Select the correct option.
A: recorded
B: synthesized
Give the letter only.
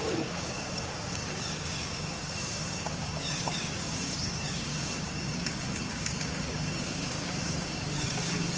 B